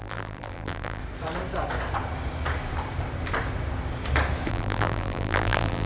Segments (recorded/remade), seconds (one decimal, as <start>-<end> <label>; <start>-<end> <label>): 0.0-1.0 remade; 1.0-4.5 recorded; 4.5-5.9 remade